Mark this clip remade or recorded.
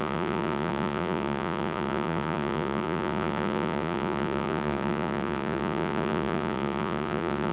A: remade